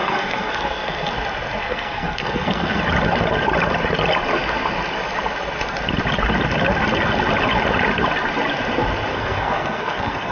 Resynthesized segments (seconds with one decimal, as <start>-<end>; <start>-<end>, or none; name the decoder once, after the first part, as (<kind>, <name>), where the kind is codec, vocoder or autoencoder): 0.0-1.1 (codec, SNAC); 1.6-2.8; 9.1-10.3